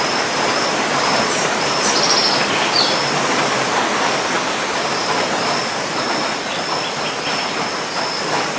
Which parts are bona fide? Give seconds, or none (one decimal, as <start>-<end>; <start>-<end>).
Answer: 0.0-0.5; 5.7-8.6